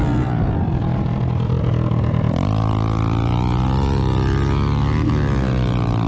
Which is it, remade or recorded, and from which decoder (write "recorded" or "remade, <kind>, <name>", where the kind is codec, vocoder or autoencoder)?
recorded